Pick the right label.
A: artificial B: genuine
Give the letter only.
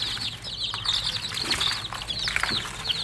B